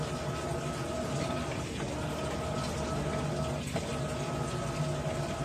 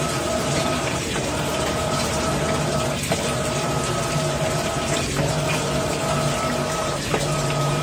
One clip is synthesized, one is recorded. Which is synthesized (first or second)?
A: second